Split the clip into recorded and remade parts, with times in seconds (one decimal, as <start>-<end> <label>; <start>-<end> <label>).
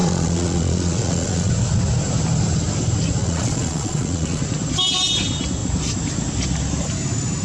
0.0-1.5 remade; 1.5-3.2 recorded; 3.2-4.4 remade; 4.4-7.4 recorded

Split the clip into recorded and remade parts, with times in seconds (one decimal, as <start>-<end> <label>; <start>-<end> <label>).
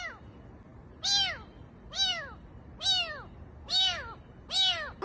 0.0-5.0 recorded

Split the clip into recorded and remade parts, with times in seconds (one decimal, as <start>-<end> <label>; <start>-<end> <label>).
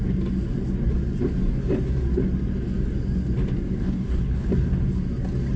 0.0-3.8 recorded; 3.8-4.5 remade; 4.5-5.6 recorded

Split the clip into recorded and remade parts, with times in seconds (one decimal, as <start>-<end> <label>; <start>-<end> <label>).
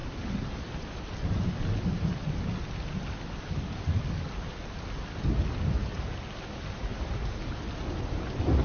0.0-8.6 recorded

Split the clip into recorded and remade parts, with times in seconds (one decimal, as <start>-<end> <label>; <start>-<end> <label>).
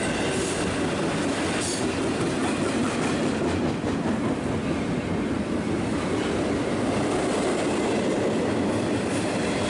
0.0-9.7 recorded